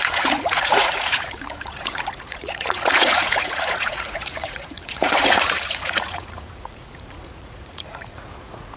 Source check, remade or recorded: remade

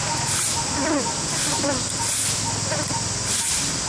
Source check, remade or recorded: recorded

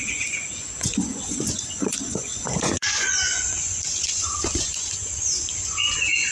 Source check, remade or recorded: remade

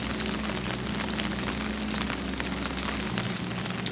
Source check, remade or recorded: recorded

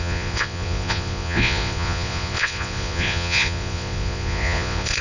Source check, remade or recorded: remade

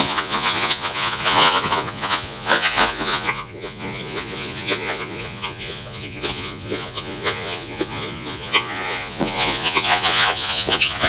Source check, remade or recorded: remade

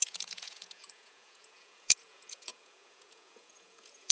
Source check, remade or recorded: remade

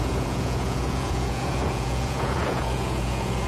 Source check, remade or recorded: remade